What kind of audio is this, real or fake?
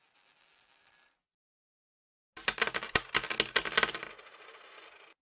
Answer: real